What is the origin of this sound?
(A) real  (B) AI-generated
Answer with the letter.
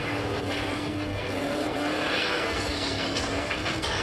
B